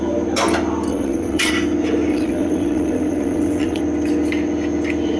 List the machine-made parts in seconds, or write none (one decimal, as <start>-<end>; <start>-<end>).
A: 0.9-1.5; 2.1-3.8